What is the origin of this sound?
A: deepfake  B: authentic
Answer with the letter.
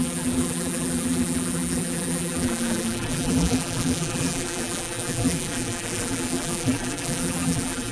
A